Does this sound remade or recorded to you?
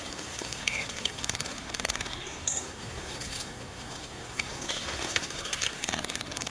remade